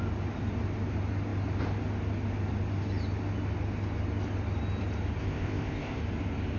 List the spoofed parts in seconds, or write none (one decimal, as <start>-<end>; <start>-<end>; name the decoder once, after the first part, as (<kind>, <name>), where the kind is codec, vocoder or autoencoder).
5.2-6.0 (codec, ZipCodec)